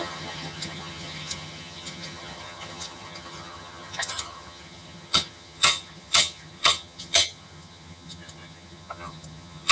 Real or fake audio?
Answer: fake